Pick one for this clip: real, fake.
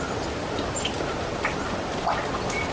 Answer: real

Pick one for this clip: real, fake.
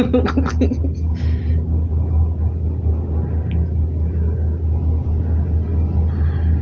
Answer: real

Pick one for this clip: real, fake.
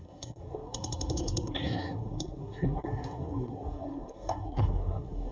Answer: fake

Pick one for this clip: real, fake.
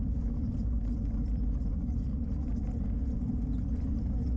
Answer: real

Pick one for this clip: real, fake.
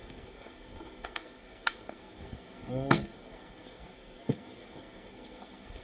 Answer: fake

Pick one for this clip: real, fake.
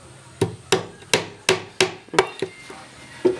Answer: real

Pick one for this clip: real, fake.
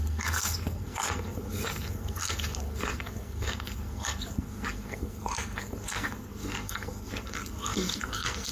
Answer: fake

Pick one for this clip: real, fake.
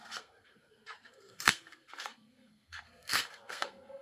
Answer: fake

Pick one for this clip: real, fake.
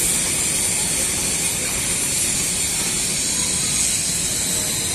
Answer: real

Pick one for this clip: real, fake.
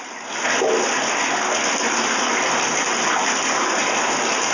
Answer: real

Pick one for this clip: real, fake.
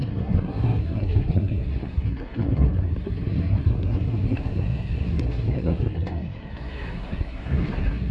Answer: fake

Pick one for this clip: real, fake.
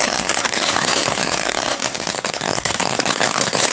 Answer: fake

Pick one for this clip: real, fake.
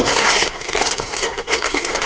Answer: fake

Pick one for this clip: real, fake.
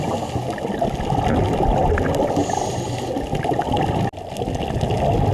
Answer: real